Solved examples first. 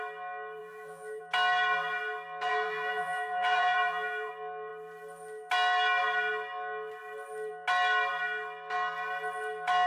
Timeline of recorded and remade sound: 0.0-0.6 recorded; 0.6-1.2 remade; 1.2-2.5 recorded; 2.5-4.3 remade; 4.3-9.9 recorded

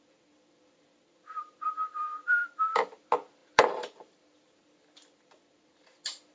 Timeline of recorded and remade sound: 0.0-6.3 remade